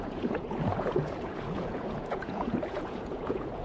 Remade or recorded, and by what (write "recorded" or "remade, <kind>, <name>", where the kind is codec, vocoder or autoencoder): remade, vocoder, Vocos